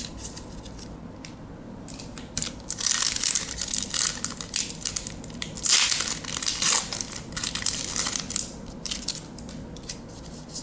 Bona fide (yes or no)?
yes